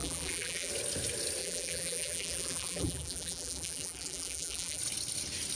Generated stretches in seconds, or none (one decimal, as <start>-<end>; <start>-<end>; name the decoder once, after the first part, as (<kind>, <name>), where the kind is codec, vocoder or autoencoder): 0.0-0.7 (vocoder, BigVGAN v2); 1.4-4.8